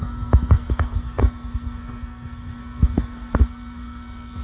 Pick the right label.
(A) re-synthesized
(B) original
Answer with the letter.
A